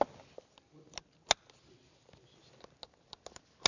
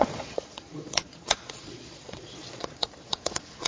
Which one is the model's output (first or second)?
second